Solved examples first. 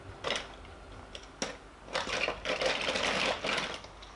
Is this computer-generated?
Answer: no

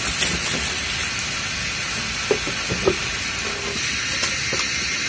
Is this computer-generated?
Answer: no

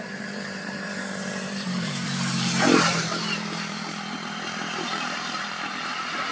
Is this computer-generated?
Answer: yes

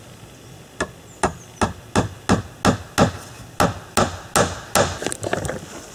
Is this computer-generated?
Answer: no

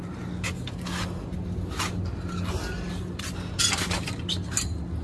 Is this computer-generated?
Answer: no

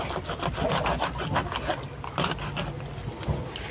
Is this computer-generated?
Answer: no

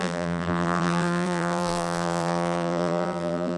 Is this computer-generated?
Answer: yes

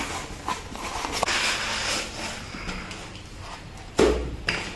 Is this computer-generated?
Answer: no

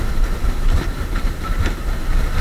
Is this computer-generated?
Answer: yes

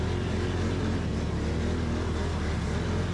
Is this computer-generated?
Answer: no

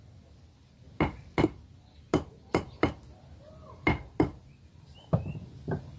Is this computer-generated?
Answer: no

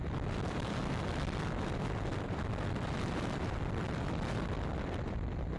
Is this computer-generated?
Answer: yes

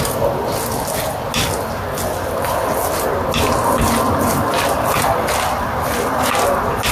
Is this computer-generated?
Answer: no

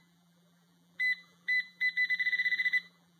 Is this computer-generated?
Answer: yes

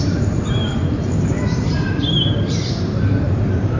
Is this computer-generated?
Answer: yes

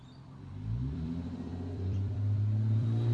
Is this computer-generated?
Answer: yes